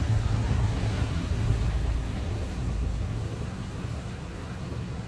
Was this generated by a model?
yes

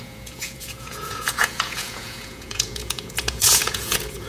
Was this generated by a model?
yes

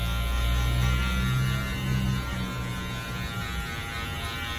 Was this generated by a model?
no